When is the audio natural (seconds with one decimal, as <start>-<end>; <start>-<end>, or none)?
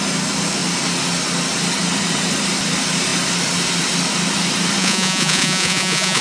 0.0-4.8